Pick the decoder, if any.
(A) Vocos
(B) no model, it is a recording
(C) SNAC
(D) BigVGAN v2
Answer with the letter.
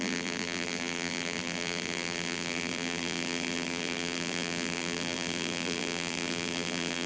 D